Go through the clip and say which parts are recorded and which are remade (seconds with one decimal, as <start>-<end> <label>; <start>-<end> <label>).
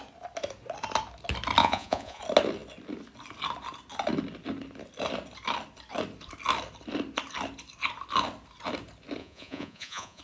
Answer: 0.0-1.6 recorded; 1.6-2.2 remade; 2.2-9.2 recorded; 9.2-10.2 remade